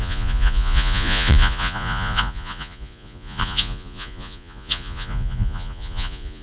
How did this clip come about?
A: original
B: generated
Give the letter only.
B